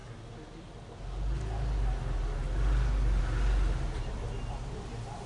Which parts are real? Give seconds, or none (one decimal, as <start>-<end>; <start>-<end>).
0.0-5.3

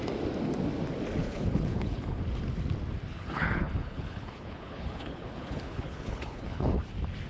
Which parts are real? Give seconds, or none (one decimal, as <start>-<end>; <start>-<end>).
0.0-1.2; 2.2-3.1; 6.8-7.3

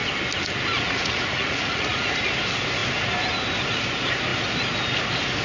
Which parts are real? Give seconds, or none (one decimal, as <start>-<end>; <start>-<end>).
0.0-0.7; 2.2-5.4

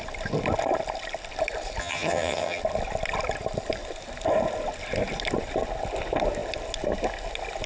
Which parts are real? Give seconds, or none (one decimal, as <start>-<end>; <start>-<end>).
0.0-1.8; 2.6-7.7

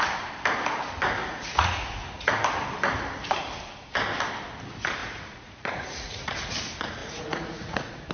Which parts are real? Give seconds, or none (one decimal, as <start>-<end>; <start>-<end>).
0.0-1.2; 2.4-5.0; 6.5-7.0

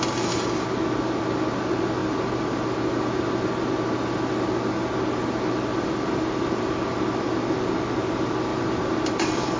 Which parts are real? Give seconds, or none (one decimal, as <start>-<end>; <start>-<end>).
0.0-5.7; 7.7-8.5